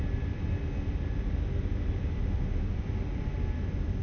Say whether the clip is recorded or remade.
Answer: recorded